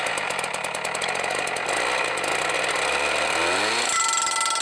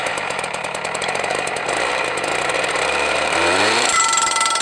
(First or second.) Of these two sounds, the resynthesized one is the second